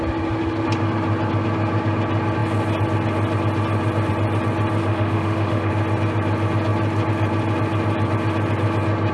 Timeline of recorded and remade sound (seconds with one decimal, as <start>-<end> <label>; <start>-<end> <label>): 0.0-4.8 recorded; 4.8-5.7 remade; 5.7-9.1 recorded